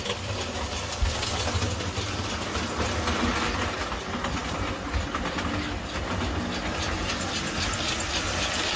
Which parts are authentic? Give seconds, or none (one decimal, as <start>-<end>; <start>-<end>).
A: 0.0-8.8